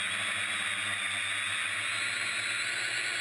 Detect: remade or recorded recorded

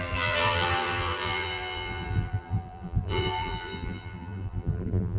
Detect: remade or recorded remade